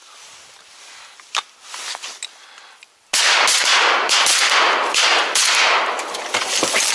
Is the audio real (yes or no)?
yes